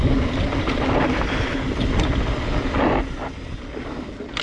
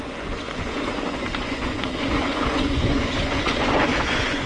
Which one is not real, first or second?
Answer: second